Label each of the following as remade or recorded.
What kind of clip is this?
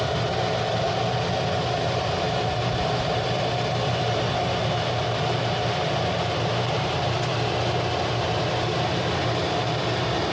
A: recorded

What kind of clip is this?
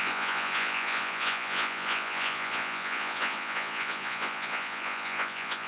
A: remade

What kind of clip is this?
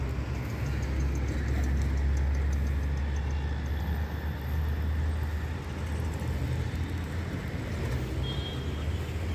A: recorded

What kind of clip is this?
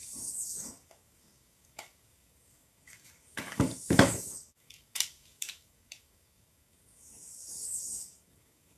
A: remade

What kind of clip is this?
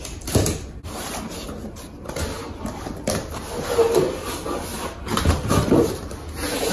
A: recorded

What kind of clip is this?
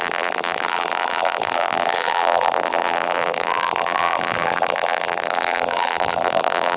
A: remade